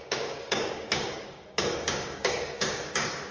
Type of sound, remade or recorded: remade